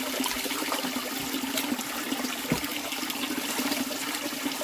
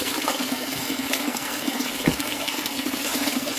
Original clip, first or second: first